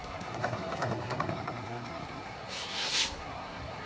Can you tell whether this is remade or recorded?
remade